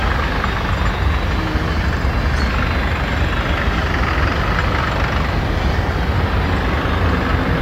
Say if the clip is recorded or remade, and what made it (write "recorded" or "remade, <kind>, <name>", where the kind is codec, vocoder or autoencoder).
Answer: recorded